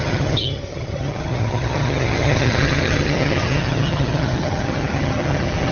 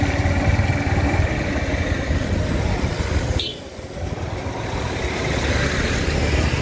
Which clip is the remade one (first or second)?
first